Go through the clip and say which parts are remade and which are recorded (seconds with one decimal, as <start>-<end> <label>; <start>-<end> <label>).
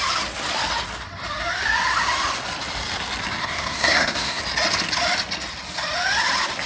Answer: 0.0-3.4 recorded; 3.4-4.4 remade; 4.4-6.7 recorded